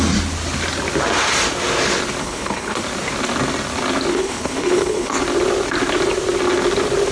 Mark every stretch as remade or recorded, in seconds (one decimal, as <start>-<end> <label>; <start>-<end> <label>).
0.0-2.2 recorded; 2.2-2.8 remade; 2.8-4.1 recorded; 4.1-5.2 remade; 5.2-7.1 recorded